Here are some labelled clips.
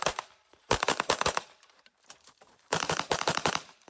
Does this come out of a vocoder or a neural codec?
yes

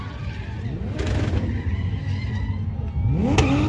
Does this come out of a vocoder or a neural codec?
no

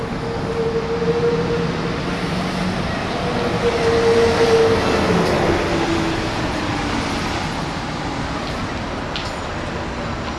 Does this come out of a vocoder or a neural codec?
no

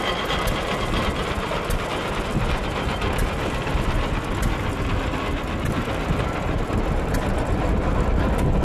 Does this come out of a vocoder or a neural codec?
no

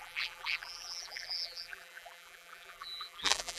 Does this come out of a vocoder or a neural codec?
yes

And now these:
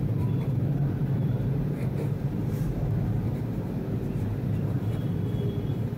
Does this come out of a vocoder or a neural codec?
yes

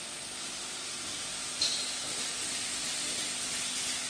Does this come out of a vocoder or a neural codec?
no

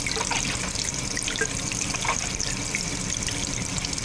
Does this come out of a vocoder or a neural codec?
yes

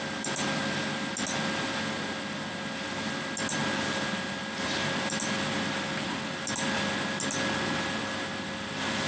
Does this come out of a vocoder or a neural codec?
no